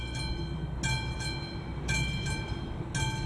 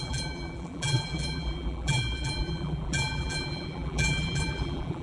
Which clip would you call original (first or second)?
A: first